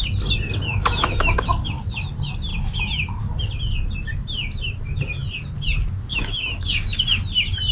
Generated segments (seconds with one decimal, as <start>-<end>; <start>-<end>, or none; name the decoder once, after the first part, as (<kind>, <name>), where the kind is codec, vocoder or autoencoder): 0.7-1.7 (autoencoder, DAC-VAE); 6.1-6.7

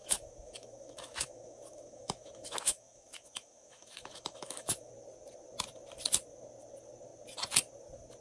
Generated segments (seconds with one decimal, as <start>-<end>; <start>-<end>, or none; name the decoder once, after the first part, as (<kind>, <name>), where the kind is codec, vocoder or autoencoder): 0.0-4.9 (autoencoder, DAC-VAE)

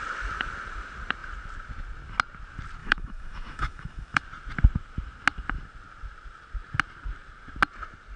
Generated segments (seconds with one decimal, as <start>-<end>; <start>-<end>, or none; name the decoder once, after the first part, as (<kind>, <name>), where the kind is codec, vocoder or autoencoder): 2.8-4.2 (autoencoder, DAC-VAE)

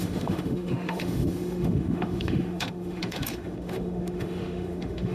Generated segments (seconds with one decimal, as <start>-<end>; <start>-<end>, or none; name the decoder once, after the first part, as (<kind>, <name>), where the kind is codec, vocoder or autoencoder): 0.0-5.1 (autoencoder, DAC-VAE)

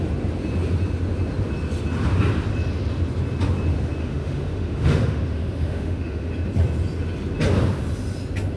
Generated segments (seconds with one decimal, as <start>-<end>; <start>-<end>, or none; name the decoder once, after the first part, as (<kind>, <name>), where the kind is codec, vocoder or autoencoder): 4.0-6.3 (autoencoder, DAC-VAE)

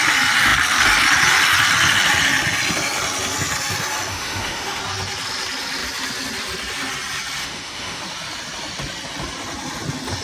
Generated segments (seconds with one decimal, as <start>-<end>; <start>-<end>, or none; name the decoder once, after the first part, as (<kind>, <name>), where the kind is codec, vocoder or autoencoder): 4.1-4.8 (autoencoder, DAC-VAE); 7.4-8.0

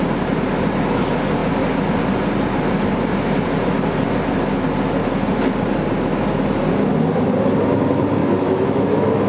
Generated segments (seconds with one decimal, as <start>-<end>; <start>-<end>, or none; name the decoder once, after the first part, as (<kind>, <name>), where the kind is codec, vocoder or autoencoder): 8.2-9.3 (autoencoder, DAC-VAE)

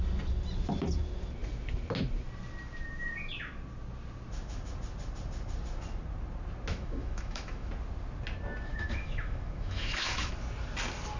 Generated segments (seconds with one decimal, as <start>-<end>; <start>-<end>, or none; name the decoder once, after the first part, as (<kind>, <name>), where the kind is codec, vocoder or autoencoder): 6.7-7.7 (autoencoder, DAC-VAE); 8.7-10.3